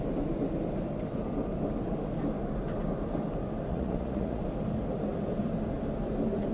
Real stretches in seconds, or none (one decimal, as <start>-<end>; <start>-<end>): 0.0-3.7; 4.4-6.5